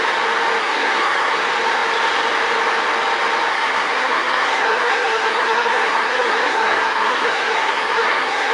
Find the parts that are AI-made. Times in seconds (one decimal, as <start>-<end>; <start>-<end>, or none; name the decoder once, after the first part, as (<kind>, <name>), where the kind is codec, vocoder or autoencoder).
0.6-1.4 (codec, SNAC); 3.5-8.5

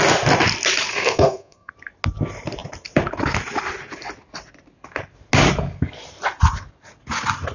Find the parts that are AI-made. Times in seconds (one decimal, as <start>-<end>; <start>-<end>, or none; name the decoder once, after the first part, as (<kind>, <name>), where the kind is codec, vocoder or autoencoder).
0.9-1.7 (codec, SNAC)

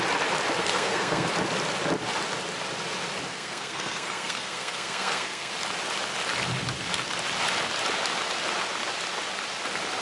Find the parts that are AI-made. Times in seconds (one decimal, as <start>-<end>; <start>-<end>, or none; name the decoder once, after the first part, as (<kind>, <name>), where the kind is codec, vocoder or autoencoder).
0.6-1.3 (codec, SNAC); 3.3-5.5

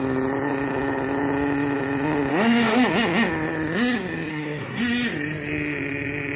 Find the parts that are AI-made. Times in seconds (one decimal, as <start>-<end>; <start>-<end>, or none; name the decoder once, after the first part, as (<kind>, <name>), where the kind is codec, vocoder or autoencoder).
2.3-2.8 (codec, SNAC); 4.3-4.8

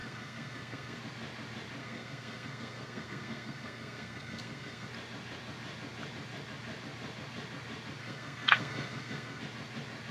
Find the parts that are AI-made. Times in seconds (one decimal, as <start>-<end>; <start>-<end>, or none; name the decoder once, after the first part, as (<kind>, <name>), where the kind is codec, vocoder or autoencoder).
0.0-1.0 (codec, SNAC); 1.8-4.9; 8.0-9.4

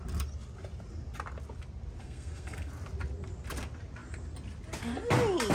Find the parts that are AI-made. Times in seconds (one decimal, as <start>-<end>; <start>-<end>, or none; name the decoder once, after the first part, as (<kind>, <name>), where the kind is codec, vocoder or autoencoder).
2.0-2.7 (codec, SNAC)

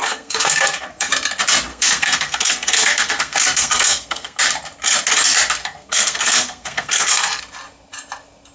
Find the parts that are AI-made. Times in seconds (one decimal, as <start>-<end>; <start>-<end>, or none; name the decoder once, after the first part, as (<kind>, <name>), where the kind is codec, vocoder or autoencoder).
0.0-1.1 (codec, SNAC); 1.7-4.4; 5.6-7.4

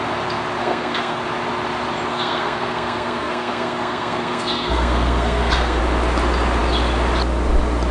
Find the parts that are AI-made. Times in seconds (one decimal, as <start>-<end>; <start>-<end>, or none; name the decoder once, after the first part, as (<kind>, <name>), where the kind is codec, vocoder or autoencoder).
0.6-1.2 (codec, SNAC); 2.1-5.8